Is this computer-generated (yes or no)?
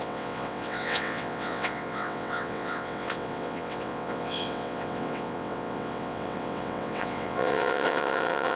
yes